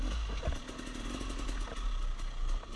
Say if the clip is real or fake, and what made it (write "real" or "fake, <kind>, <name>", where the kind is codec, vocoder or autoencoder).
real